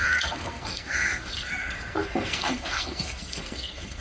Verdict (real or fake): fake